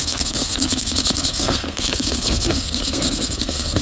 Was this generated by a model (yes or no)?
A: yes